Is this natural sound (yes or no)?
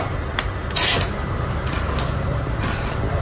yes